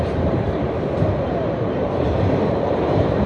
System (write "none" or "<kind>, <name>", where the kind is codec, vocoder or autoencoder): vocoder, BigVGAN v2